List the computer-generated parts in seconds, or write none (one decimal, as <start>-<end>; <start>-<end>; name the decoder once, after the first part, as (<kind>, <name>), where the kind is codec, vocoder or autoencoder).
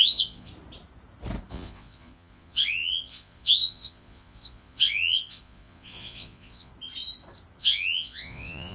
0.0-0.5 (vocoder, Vocos); 1.5-6.7; 7.6-8.7